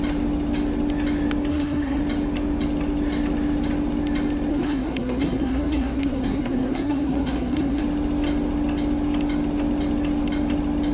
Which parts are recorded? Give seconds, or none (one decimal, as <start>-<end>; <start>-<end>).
0.0-1.5; 2.0-4.5; 7.8-10.9